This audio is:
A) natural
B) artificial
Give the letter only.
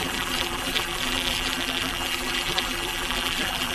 B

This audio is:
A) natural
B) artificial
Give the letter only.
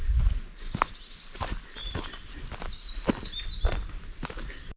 A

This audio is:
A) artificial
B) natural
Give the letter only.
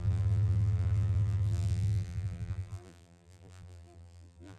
A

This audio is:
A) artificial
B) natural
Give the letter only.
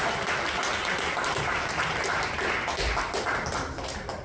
B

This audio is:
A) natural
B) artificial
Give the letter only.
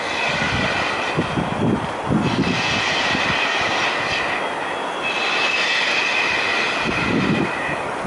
A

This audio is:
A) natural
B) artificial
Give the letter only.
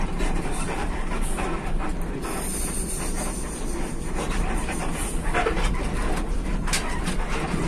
B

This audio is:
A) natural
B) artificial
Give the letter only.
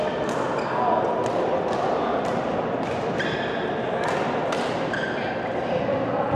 A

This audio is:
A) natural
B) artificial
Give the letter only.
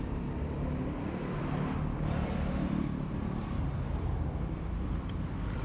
B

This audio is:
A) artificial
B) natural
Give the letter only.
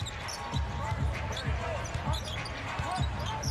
B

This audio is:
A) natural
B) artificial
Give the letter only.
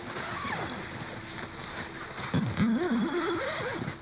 A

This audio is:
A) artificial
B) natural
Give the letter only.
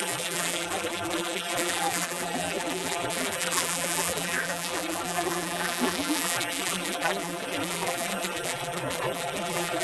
A